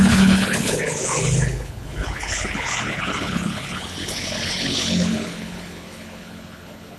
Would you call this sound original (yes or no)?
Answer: no